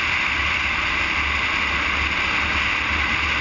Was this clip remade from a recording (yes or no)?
no